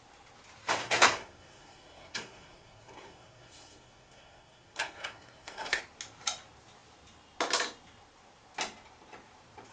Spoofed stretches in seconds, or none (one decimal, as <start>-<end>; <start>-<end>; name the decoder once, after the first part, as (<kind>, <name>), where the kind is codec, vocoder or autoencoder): 0.8-5.8 (codec, SNAC)